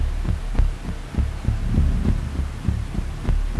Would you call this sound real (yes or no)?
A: yes